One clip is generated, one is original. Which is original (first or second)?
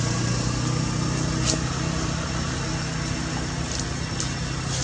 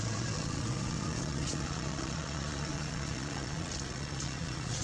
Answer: first